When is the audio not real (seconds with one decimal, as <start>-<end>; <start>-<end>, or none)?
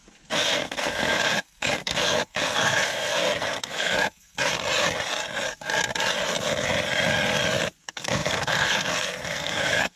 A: 0.0-4.5; 7.8-10.0